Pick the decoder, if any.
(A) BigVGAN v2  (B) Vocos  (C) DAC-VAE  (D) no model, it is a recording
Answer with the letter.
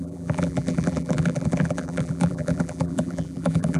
A